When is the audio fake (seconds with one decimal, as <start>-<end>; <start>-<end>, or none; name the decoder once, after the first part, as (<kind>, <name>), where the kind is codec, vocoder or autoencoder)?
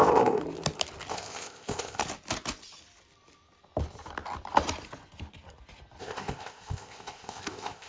0.0-0.4 (codec, ZipCodec); 1.1-2.0; 6.0-7.9